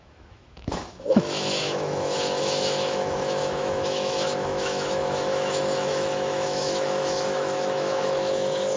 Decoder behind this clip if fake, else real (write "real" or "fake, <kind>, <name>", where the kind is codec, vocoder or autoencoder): fake, autoencoder, DAC-VAE